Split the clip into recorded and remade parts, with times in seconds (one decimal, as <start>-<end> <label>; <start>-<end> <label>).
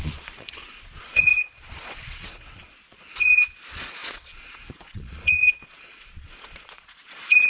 0.0-7.5 remade